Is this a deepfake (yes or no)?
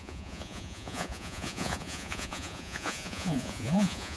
yes